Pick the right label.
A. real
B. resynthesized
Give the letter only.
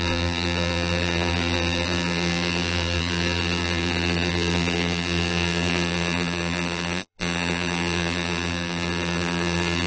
B